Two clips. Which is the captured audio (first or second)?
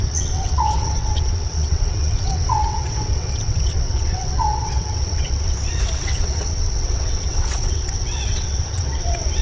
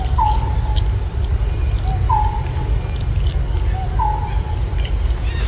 second